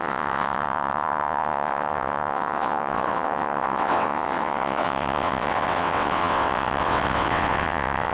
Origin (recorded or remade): remade